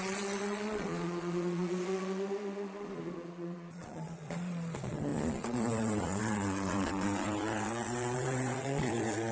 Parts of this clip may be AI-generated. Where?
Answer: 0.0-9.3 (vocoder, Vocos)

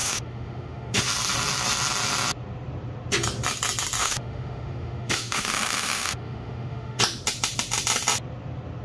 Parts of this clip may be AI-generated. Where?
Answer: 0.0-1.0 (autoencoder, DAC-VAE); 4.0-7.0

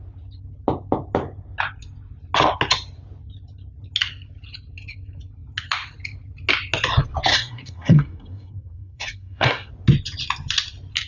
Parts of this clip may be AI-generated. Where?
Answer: 7.3-9.7 (codec, SNAC)